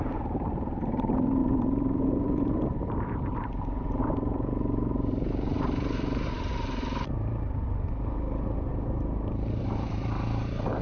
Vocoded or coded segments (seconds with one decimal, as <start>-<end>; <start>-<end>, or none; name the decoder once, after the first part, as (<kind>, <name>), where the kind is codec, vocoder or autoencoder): 0.0-10.8 (vocoder, BigVGAN v2)